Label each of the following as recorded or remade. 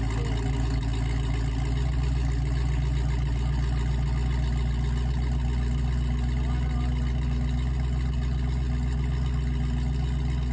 recorded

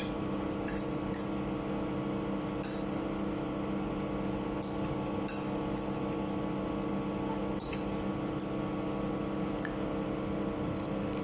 recorded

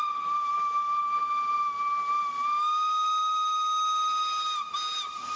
recorded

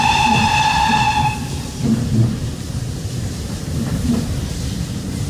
remade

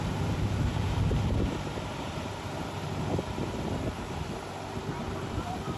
remade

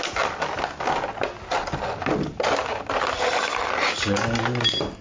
recorded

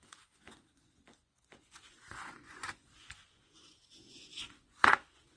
remade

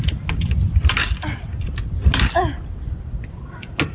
recorded